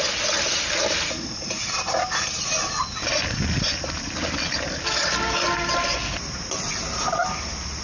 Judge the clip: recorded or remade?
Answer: recorded